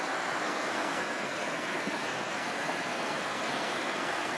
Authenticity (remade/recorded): remade